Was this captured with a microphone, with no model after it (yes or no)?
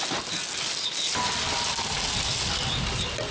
yes